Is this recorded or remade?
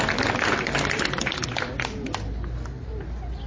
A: recorded